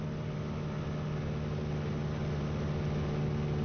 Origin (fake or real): real